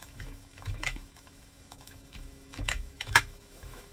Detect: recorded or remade remade